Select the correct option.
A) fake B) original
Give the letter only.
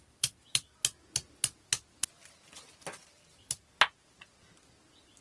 B